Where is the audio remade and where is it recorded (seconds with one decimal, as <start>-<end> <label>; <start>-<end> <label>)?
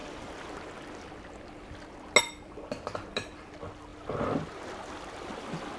0.0-5.8 recorded